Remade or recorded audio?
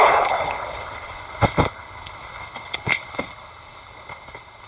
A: remade